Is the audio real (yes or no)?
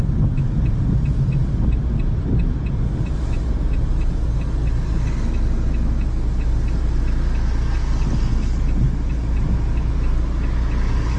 yes